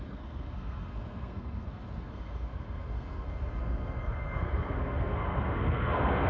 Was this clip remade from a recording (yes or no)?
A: yes